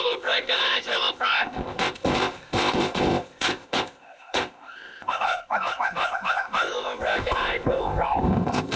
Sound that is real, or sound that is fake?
fake